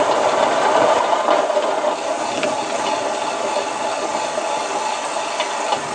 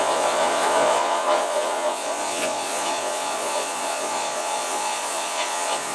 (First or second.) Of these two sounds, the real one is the first